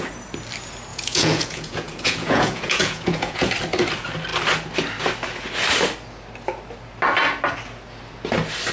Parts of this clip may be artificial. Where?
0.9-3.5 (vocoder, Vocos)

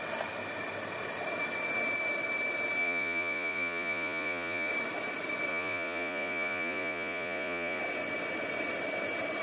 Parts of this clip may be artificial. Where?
2.8-4.7 (vocoder, Vocos); 5.5-7.8

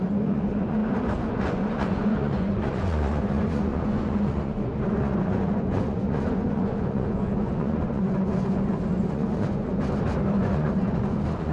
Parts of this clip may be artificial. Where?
0.0-0.8 (vocoder, Vocos); 1.3-9.8; 10.4-11.5

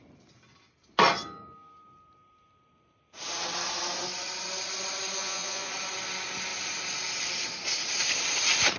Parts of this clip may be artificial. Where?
5.2-5.7 (vocoder, Vocos)

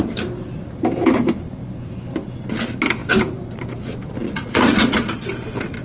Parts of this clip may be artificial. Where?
4.3-5.3 (vocoder, Vocos)